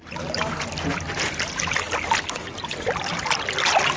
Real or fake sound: real